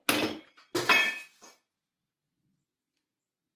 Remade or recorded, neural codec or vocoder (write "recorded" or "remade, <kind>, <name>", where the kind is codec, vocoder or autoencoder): recorded